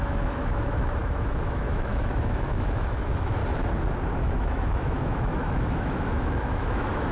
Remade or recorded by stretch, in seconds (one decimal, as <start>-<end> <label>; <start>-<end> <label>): 0.0-3.4 remade; 3.4-4.2 recorded; 4.2-7.1 remade